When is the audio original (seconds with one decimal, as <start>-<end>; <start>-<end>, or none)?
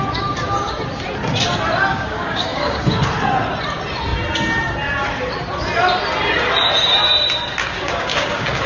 0.0-1.9; 3.0-7.6